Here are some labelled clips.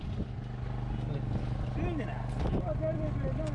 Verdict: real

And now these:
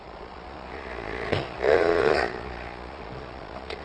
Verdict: fake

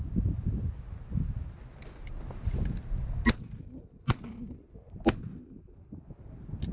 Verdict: real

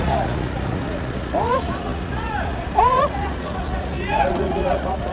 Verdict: fake